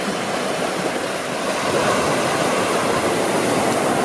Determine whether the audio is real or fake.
real